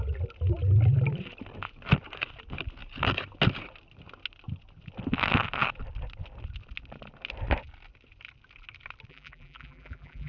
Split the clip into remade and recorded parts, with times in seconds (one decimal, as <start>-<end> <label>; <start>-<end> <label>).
0.0-9.1 recorded; 9.1-10.3 remade